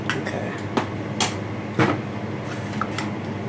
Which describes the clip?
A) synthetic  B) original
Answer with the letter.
B